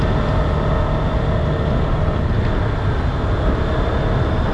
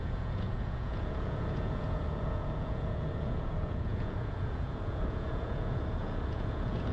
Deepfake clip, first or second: second